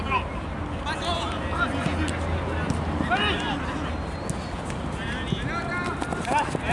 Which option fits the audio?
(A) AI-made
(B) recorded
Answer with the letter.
B